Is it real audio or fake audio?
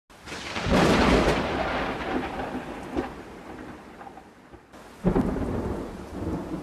real